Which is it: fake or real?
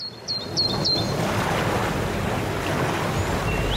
real